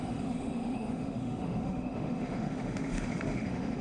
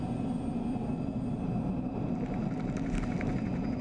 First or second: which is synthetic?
first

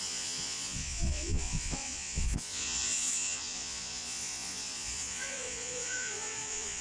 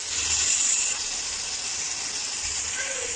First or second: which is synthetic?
first